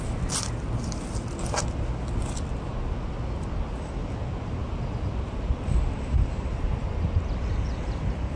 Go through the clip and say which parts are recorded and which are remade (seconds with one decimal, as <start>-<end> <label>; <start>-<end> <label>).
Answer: 0.0-8.4 recorded